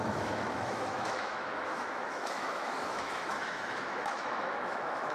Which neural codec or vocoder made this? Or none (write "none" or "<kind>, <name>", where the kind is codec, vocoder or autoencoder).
autoencoder, DAC-VAE